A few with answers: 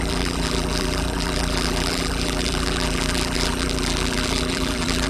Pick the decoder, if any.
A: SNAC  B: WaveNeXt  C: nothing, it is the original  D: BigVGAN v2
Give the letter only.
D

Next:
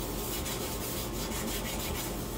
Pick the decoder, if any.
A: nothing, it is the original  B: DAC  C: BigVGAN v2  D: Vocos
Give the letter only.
A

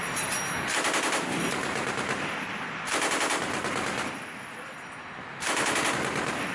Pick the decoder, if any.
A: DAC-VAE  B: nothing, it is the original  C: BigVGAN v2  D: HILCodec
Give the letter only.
B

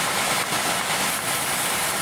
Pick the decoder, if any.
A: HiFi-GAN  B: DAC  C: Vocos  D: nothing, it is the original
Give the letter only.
D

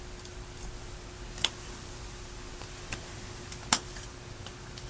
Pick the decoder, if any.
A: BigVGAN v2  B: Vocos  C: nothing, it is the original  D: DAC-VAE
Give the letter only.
C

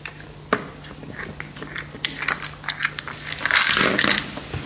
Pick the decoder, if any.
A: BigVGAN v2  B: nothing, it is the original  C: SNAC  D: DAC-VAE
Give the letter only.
B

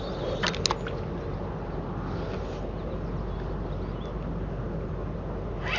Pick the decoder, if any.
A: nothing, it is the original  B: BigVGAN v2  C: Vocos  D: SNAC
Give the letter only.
A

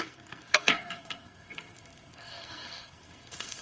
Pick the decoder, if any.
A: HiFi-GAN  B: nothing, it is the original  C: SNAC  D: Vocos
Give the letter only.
C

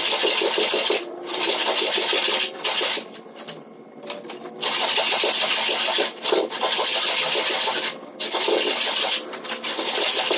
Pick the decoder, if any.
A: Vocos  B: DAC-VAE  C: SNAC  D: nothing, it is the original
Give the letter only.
D